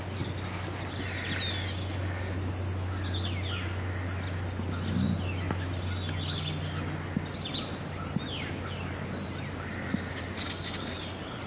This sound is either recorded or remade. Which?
recorded